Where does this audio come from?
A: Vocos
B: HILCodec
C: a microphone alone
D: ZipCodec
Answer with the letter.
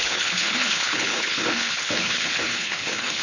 B